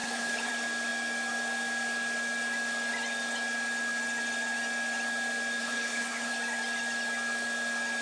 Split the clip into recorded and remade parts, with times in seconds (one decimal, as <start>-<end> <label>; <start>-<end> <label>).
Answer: 0.0-0.5 remade; 0.5-5.6 recorded; 5.6-6.3 remade; 6.3-8.0 recorded